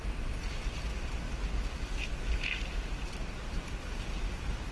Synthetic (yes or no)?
no